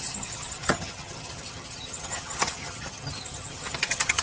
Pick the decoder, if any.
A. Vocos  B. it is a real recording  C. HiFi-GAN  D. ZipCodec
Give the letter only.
C